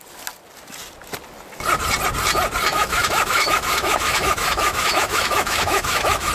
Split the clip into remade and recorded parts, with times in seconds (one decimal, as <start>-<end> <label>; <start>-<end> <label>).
0.0-2.7 recorded; 2.7-6.3 remade